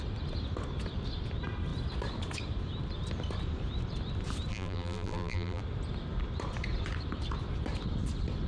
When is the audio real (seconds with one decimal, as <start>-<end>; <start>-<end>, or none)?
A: 0.0-4.5; 5.6-8.5